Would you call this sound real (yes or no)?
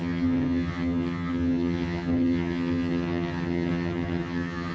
no